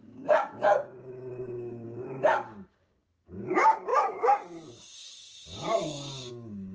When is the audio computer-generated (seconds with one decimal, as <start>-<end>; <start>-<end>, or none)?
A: 0.0-6.7